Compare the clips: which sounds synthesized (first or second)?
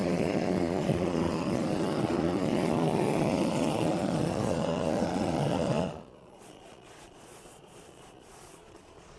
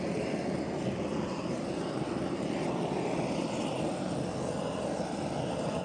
first